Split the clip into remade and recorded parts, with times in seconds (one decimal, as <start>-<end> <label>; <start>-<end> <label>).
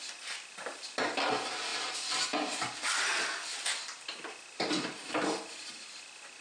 0.0-6.4 recorded